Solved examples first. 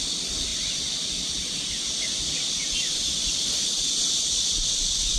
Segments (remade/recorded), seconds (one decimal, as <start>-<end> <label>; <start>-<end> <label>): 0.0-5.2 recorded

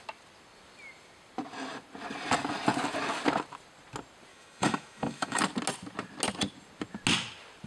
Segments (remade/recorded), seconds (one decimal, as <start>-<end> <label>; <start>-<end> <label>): 0.0-4.3 recorded; 4.3-5.4 remade; 5.4-7.7 recorded

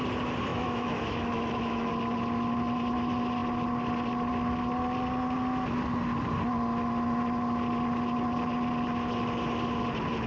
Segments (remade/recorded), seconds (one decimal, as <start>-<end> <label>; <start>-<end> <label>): 0.0-0.5 recorded; 0.5-1.9 remade; 1.9-10.3 recorded

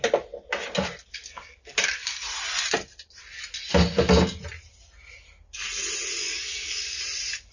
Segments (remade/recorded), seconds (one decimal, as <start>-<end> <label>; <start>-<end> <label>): 0.0-1.2 recorded; 1.2-2.1 remade; 2.1-6.2 recorded; 6.2-7.0 remade; 7.0-7.5 recorded

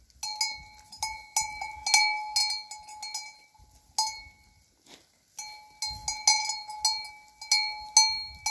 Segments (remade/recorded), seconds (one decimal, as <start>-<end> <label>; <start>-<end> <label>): 0.0-8.5 recorded